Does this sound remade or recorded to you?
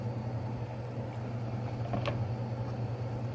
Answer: recorded